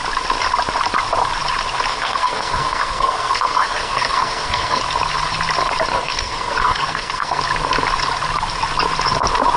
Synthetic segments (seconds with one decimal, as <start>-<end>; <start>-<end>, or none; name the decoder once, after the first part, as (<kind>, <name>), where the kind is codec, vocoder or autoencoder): 1.9-4.8 (codec, SNAC); 5.9-7.4